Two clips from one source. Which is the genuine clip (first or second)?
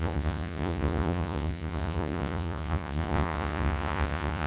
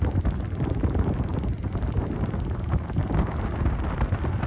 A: second